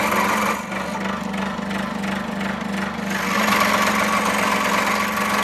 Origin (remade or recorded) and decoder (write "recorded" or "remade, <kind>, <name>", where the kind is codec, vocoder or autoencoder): recorded